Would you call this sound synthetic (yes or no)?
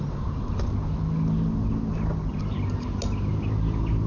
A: no